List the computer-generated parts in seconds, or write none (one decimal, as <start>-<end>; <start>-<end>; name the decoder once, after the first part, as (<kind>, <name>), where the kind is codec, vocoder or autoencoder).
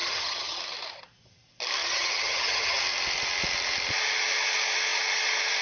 0.0-0.6 (vocoder, HiFi-GAN); 1.8-2.8